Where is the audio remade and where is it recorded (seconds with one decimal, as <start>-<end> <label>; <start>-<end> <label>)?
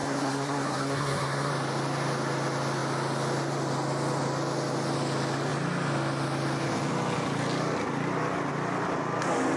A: 0.0-1.5 remade; 1.5-9.6 recorded